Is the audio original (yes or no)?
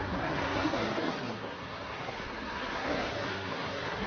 no